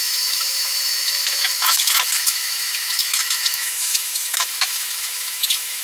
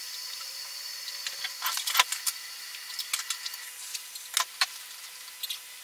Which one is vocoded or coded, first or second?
first